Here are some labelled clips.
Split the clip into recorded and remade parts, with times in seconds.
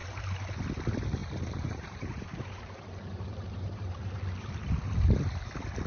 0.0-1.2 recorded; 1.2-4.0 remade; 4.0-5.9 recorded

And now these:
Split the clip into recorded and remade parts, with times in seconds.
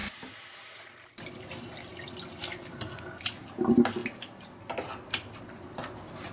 0.0-6.3 recorded